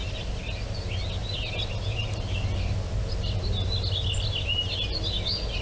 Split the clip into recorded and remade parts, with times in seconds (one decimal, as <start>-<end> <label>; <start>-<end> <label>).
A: 0.0-5.6 recorded